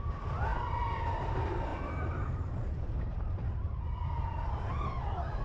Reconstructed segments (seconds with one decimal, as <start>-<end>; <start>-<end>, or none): 1.7-3.8

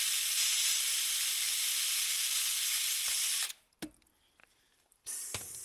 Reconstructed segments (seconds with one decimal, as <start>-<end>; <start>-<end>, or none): 0.6-3.6; 4.4-5.6

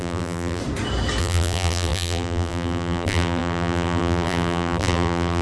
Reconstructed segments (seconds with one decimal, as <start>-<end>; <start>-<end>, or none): 0.0-0.6; 1.2-5.4